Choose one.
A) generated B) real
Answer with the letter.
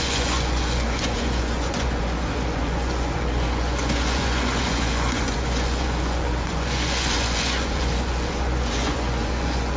A